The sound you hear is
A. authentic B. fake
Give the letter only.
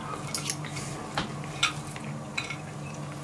A